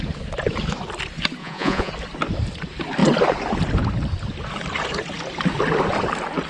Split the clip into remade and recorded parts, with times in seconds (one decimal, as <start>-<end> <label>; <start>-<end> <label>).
0.0-1.4 recorded; 1.4-1.9 remade; 1.9-6.5 recorded